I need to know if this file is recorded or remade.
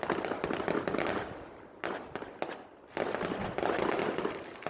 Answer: recorded